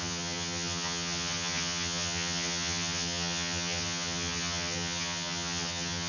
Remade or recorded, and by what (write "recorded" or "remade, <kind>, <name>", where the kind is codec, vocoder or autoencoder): remade, vocoder, HiFi-GAN